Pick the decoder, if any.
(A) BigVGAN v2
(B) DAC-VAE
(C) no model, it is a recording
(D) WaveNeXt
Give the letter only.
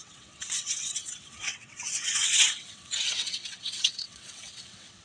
D